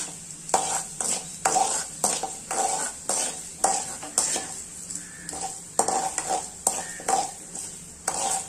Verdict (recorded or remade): recorded